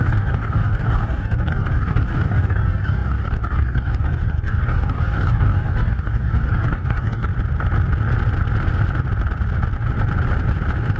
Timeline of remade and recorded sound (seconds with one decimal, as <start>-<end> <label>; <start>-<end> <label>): 0.0-7.3 remade; 7.3-11.0 recorded